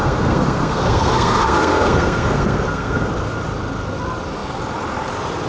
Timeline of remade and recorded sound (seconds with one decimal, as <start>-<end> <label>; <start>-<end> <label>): 0.0-3.1 remade; 3.1-5.5 recorded